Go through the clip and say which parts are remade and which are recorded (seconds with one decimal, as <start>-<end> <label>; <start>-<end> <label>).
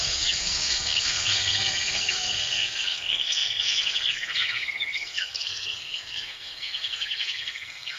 0.0-8.0 remade